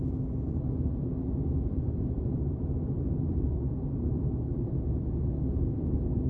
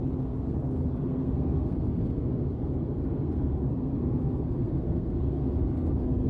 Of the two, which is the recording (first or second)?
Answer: first